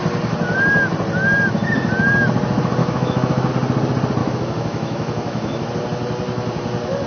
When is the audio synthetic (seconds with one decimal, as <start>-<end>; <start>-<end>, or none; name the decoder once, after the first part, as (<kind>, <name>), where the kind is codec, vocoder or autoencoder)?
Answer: 2.8-3.5 (autoencoder, DAC-VAE); 4.2-5.7